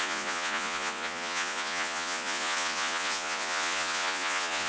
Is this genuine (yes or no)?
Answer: no